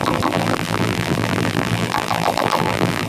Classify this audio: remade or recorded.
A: remade